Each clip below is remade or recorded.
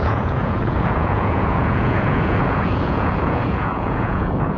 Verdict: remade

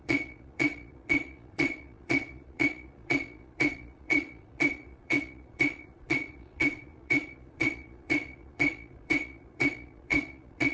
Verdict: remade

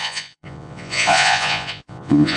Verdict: remade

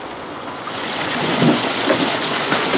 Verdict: remade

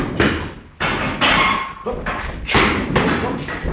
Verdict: recorded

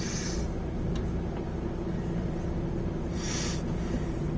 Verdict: recorded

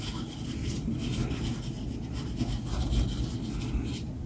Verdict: recorded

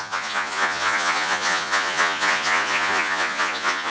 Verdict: remade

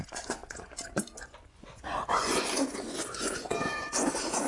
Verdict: remade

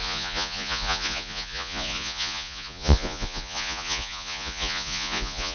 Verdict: remade